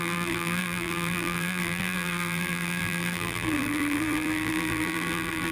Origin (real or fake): fake